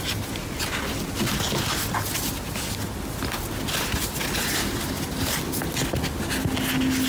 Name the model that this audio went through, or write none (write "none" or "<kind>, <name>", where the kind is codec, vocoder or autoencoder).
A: none